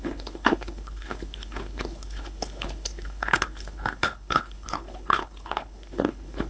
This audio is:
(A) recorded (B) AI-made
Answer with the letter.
B